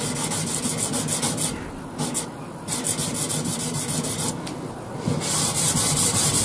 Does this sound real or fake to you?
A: real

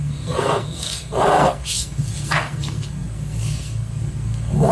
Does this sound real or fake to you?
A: fake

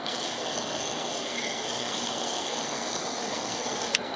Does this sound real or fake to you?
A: fake